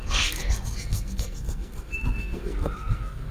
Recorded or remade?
remade